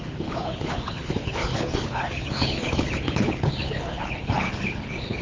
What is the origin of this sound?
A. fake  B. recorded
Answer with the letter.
A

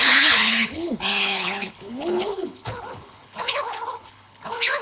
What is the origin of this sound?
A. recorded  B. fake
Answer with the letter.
B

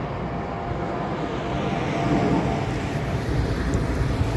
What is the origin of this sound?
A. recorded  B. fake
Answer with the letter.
B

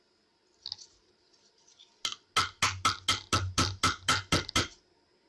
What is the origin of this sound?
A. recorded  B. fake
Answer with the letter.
A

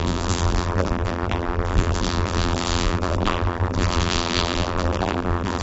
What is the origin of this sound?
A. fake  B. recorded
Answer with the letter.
A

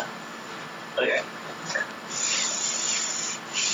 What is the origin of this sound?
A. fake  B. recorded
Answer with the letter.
B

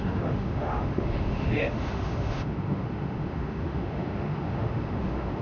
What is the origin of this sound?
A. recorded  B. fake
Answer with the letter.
B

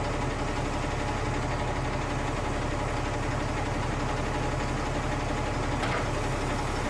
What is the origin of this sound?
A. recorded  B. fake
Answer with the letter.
A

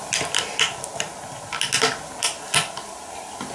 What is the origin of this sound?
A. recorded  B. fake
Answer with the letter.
A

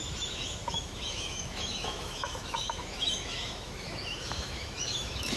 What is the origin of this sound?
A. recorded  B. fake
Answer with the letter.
B